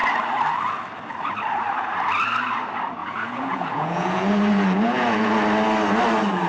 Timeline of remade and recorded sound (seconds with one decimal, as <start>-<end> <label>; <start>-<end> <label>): 0.0-3.0 recorded; 3.0-5.3 remade; 5.3-6.5 recorded